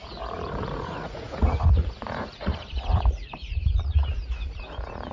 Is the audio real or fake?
fake